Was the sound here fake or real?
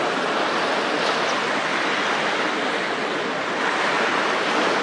real